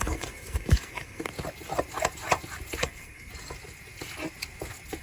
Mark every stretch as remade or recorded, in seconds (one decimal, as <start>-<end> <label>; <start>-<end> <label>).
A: 0.0-1.3 remade; 1.3-2.8 recorded; 2.8-3.3 remade; 3.3-5.0 recorded